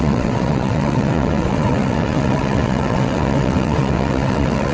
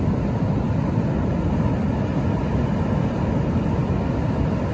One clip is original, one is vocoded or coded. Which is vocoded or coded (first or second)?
first